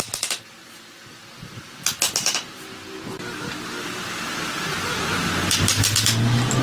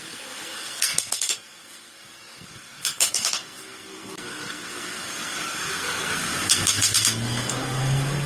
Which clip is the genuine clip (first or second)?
first